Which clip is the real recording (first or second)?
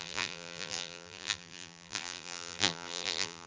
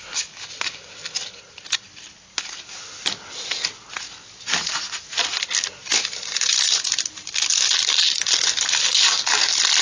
second